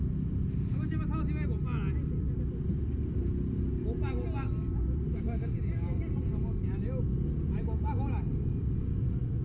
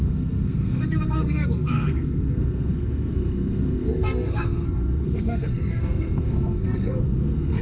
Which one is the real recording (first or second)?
first